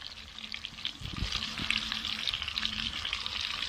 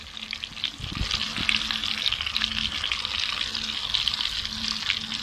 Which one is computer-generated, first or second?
first